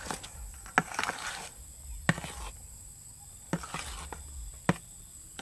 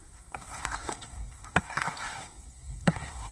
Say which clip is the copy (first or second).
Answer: second